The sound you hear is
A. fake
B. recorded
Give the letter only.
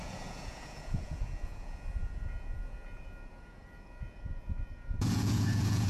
A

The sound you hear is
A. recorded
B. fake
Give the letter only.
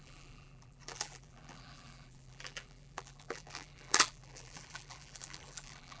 B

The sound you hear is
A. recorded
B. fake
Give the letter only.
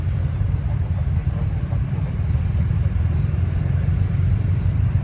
A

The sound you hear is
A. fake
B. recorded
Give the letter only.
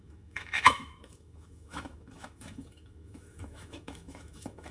A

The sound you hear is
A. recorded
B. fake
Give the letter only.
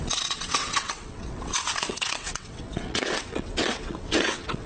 B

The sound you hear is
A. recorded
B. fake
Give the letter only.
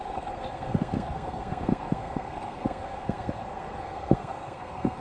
B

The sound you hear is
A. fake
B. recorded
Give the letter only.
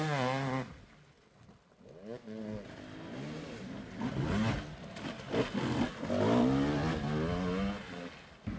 B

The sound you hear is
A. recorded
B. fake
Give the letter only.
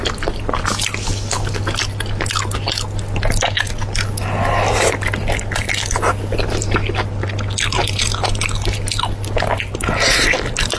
A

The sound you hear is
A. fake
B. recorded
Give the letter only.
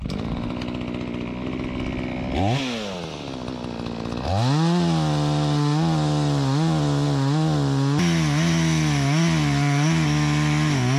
B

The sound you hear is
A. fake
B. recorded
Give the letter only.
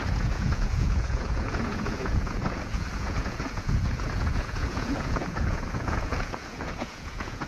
A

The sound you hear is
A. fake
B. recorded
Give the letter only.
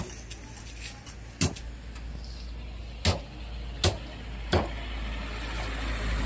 B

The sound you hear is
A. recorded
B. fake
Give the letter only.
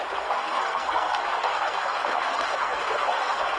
B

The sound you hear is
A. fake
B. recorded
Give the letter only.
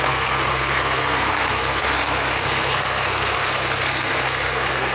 A